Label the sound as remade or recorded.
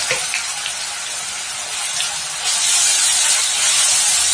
recorded